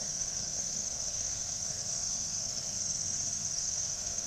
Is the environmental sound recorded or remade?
remade